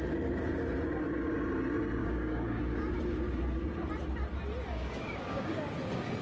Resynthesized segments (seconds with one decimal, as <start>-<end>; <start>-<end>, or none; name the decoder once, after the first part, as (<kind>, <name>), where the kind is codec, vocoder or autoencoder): 2.0-2.6 (codec, DAC); 4.7-5.8